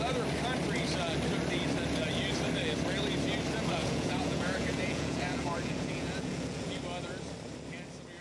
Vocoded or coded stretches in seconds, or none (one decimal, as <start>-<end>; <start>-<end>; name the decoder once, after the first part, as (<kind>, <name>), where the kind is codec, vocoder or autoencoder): 3.8-6.7 (vocoder, Vocos)